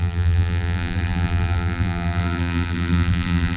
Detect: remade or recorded remade